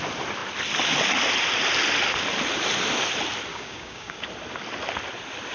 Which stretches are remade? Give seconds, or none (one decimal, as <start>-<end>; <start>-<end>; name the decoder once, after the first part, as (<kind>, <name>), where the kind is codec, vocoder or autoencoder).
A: 3.5-4.3 (codec, DAC)